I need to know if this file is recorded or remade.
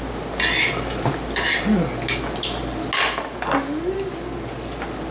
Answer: recorded